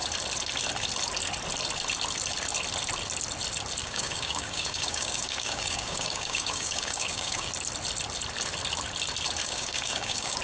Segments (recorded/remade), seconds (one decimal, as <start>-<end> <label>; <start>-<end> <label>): 0.0-3.8 recorded; 3.8-7.5 remade; 7.5-9.4 recorded; 9.4-10.4 remade